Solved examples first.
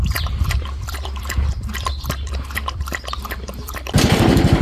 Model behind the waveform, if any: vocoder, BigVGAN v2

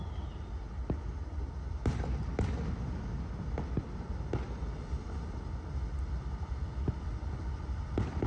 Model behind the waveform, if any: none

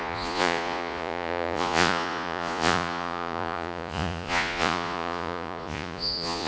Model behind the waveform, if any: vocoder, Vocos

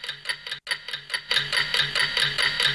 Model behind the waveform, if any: none